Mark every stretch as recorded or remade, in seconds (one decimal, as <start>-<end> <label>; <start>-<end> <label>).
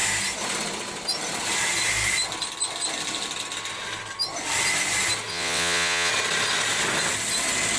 0.0-5.3 recorded; 5.3-6.1 remade; 6.1-7.8 recorded